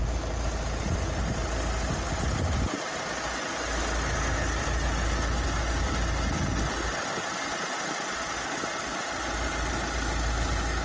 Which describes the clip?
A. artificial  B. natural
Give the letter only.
B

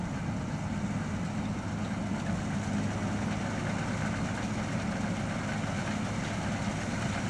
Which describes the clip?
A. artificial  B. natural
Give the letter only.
B